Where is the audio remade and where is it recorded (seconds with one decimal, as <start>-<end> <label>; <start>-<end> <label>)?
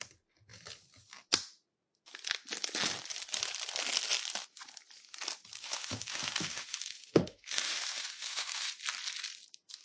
0.0-5.6 recorded; 5.6-8.7 remade; 8.7-9.8 recorded